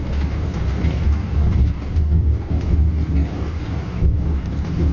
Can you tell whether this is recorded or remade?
remade